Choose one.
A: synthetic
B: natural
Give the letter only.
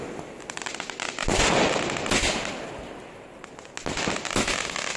B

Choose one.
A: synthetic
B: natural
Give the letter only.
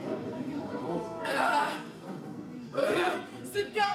A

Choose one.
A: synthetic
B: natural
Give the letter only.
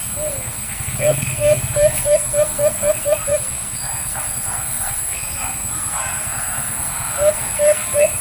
A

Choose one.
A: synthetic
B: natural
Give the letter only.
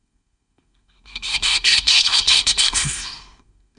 A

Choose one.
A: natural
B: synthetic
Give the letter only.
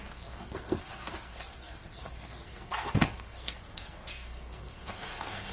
B